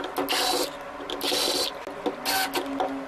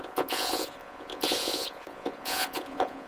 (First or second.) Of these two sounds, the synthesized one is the second